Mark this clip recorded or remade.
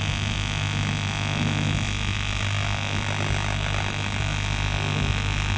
recorded